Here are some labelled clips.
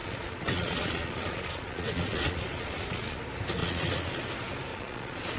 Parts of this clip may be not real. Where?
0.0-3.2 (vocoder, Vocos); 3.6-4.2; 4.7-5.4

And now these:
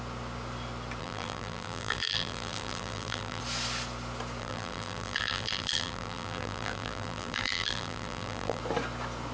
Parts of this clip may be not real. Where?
1.0-3.4 (vocoder, BigVGAN v2); 4.4-8.6

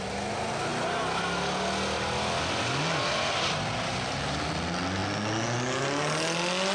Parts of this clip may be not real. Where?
none

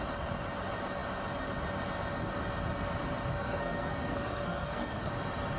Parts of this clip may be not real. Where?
3.4-5.1 (codec, SNAC)